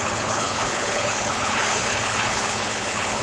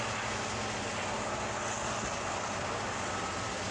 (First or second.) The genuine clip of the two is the second